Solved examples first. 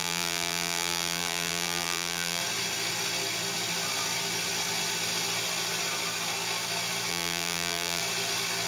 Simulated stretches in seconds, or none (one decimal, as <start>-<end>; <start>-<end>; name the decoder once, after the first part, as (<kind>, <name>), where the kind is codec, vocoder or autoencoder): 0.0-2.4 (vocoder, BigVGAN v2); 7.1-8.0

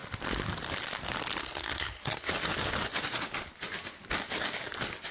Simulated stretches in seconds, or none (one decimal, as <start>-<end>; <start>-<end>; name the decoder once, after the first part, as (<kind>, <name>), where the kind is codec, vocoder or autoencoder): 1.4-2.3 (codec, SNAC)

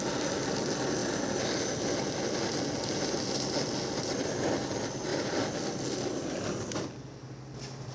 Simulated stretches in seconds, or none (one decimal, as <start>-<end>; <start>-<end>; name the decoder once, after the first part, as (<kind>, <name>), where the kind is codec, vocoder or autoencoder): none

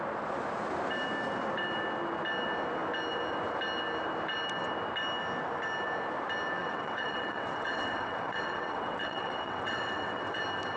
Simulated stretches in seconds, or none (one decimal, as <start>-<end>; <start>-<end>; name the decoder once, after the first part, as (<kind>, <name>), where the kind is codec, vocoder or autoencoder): 6.6-10.4 (vocoder, WaveNeXt)

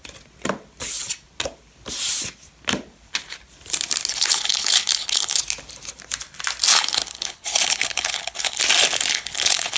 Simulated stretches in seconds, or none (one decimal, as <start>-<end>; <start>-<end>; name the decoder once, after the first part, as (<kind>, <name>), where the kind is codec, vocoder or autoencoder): 4.1-5.4 (codec, HILCodec); 6.7-8.6; 9.1-9.8

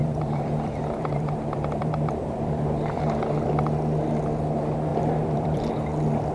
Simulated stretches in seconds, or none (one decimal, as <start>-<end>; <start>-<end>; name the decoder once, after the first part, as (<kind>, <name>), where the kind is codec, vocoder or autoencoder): 0.0-3.6 (vocoder, BigVGAN v2); 4.9-5.7

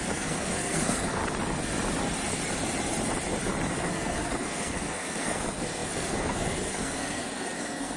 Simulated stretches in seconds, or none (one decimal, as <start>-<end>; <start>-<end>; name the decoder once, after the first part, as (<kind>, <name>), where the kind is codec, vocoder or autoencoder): 0.0-1.2 (codec, SNAC); 3.7-8.0

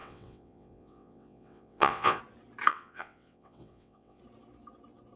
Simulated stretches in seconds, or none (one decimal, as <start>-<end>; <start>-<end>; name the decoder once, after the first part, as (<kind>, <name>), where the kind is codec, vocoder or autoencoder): 0.0-2.2 (vocoder, WaveNeXt); 2.7-4.2